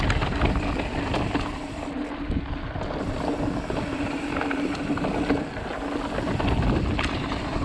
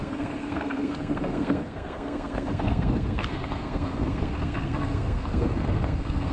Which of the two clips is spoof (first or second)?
second